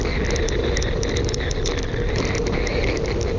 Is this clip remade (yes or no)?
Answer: no